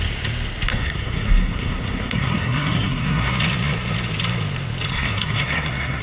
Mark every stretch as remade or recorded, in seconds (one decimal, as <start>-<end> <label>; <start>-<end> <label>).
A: 0.0-0.7 recorded; 0.7-3.3 remade; 3.3-4.9 recorded; 4.9-6.0 remade